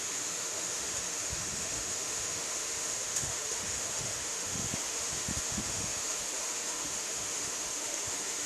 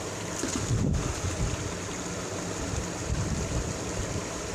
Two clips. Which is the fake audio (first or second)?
first